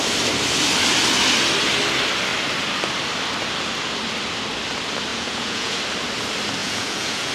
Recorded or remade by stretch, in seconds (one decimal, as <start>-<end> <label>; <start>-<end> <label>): 0.0-5.1 recorded; 5.1-5.8 remade; 5.8-6.6 recorded; 6.6-7.3 remade